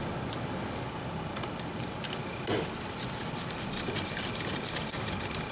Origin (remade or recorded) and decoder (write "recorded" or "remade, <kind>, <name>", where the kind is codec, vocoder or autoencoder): recorded